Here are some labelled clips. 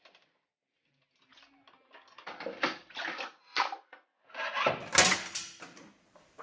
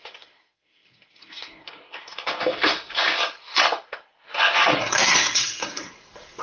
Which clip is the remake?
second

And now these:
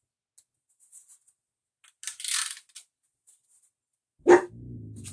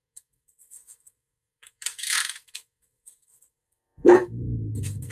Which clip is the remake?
second